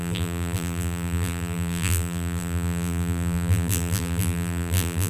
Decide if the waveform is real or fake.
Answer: fake